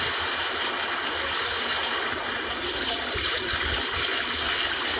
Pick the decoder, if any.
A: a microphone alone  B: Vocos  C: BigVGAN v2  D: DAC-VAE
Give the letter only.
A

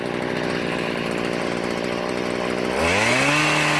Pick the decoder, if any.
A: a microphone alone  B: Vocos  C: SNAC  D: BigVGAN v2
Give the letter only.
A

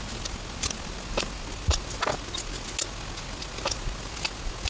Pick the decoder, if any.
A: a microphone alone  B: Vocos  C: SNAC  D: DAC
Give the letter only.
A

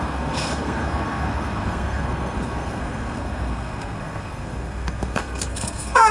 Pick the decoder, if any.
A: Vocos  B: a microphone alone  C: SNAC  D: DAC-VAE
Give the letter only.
C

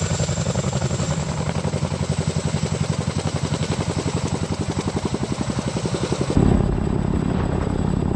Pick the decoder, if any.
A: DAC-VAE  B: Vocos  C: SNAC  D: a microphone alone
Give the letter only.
D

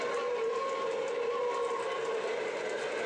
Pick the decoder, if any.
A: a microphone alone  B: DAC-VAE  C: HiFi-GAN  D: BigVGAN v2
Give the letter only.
A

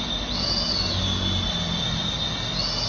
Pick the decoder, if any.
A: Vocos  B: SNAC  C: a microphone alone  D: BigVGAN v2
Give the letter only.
C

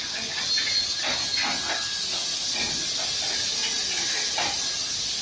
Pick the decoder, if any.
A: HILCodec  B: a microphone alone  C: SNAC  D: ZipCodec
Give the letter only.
B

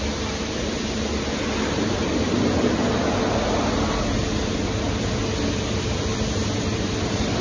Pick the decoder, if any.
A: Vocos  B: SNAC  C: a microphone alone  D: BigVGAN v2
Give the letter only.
C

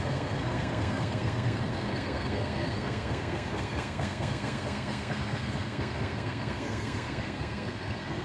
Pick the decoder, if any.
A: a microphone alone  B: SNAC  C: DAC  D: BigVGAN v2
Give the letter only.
B